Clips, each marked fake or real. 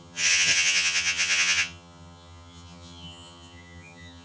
fake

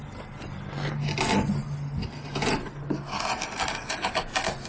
real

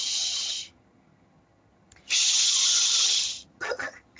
fake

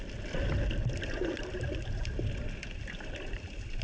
real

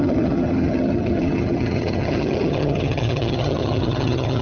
fake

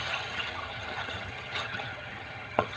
fake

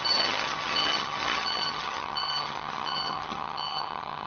fake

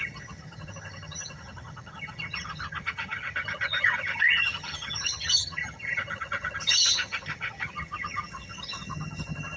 fake